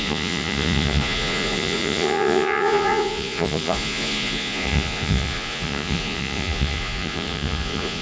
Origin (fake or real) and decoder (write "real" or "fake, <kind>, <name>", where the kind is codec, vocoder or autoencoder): fake, vocoder, Vocos